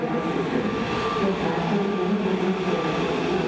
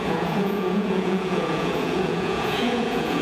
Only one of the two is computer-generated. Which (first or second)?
second